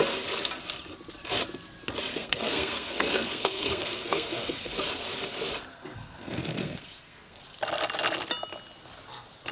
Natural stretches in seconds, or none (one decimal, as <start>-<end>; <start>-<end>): 0.0-2.1; 4.7-5.7; 7.4-9.5